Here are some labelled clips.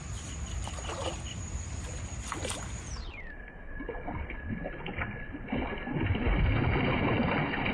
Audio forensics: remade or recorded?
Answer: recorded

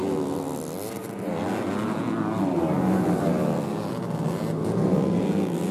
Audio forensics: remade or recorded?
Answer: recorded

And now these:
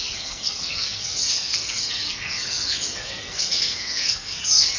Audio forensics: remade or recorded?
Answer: remade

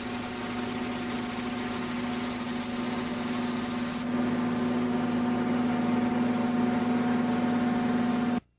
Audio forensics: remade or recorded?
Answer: recorded